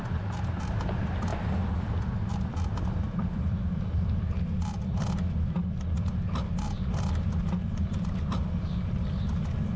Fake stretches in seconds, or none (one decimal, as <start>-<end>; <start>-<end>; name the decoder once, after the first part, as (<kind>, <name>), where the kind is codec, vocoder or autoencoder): 1.3-2.0 (vocoder, BigVGAN v2)